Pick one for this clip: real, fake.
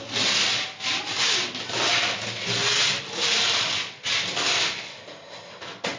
real